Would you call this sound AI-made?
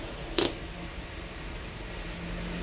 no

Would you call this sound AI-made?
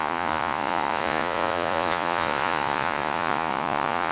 yes